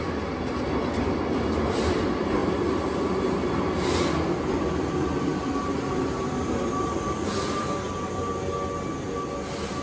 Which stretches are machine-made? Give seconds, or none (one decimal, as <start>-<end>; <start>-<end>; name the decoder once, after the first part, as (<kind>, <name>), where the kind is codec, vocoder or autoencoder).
5.3-8.2 (vocoder, BigVGAN v2)